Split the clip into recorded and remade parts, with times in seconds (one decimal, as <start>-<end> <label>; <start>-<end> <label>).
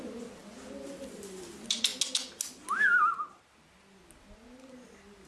0.0-5.3 recorded